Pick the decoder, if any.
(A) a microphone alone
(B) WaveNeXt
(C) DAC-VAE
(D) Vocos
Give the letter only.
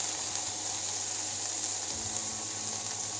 A